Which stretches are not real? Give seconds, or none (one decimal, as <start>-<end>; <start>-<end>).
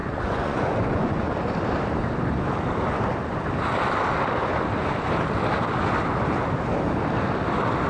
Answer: 0.0-1.3